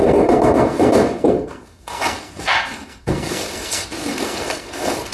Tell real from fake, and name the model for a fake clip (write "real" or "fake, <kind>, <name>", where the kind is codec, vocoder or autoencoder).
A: fake, codec, SNAC